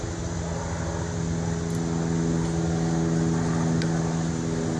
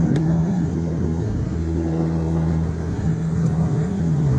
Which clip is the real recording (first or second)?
first